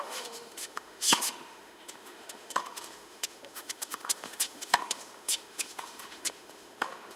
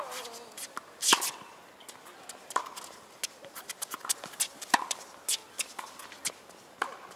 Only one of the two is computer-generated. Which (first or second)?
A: first